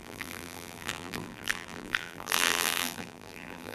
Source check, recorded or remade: remade